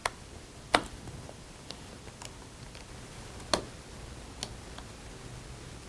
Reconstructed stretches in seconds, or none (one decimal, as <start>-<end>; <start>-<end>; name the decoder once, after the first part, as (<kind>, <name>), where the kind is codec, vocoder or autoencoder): 0.0-3.5 (vocoder, BigVGAN v2)